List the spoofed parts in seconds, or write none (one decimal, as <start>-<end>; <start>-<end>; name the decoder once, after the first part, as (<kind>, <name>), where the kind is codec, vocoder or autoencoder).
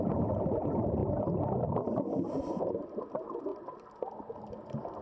3.5-4.5 (vocoder, BigVGAN v2)